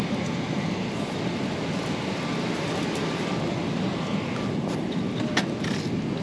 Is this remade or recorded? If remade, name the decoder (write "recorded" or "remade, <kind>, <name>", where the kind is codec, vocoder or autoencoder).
recorded